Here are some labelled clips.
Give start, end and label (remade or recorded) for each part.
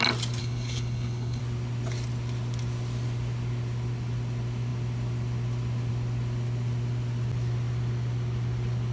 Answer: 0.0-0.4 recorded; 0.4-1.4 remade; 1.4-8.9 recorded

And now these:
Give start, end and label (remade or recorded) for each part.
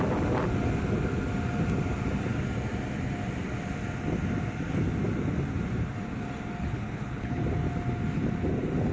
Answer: 0.0-6.6 recorded; 6.6-7.4 remade; 7.4-8.9 recorded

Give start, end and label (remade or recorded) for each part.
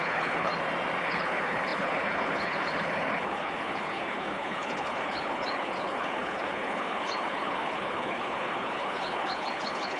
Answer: 0.0-0.5 remade; 0.5-1.0 recorded; 1.0-10.0 remade